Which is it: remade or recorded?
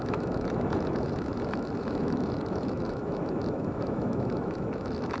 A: remade